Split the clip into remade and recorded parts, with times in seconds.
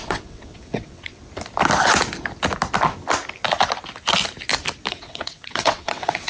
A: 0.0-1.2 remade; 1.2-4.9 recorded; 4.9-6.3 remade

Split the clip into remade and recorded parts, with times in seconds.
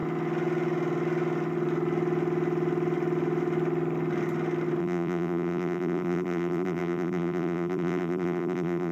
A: 0.0-4.8 recorded; 4.8-8.9 remade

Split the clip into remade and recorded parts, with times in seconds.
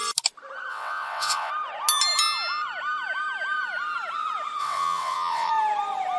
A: 0.0-0.7 recorded; 0.7-1.5 remade; 1.5-4.6 recorded; 4.6-5.5 remade; 5.5-6.2 recorded